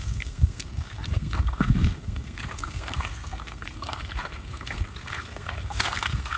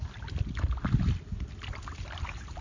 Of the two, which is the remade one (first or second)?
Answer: first